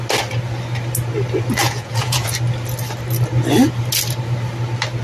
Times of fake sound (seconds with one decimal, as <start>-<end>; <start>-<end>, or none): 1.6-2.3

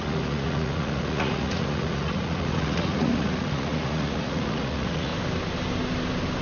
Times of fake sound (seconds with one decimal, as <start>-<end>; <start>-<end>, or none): 0.0-5.1

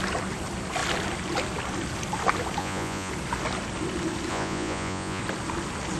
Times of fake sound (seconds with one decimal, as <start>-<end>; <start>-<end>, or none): 2.6-3.1; 4.3-5.2

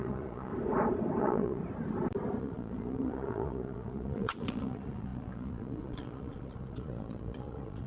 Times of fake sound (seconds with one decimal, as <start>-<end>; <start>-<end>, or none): 0.0-0.5; 1.2-1.6; 2.4-7.9

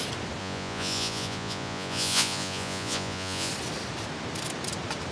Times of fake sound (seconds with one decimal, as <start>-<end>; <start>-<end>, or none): 0.4-3.5

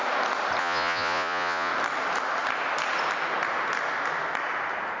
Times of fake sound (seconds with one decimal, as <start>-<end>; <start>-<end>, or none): 0.6-1.7